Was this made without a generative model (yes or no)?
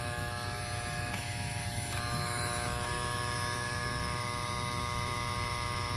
no